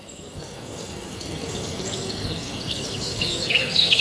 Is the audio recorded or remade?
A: remade